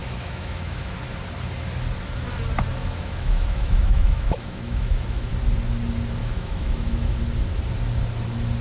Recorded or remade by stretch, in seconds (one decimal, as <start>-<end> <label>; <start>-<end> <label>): 0.0-0.9 remade; 0.9-2.8 recorded; 2.8-5.3 remade; 5.3-6.2 recorded; 6.2-7.2 remade; 7.2-8.6 recorded

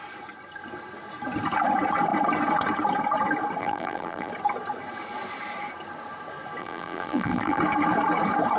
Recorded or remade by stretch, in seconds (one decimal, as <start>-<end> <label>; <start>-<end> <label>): 0.0-3.6 recorded; 3.6-4.3 remade; 4.3-6.6 recorded; 6.6-7.6 remade; 7.6-8.6 recorded

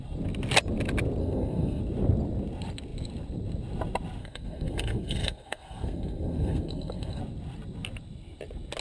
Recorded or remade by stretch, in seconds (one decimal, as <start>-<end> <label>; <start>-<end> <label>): 0.0-1.2 recorded; 1.2-1.8 remade; 1.8-4.2 recorded; 4.2-7.2 remade; 7.2-8.8 recorded

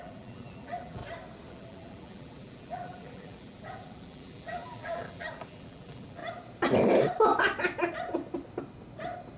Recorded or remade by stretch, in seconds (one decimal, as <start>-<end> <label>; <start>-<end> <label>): 0.0-1.0 remade; 1.0-1.5 recorded; 1.5-6.2 remade; 6.2-9.4 recorded